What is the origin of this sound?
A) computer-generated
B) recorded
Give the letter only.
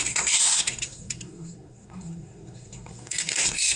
A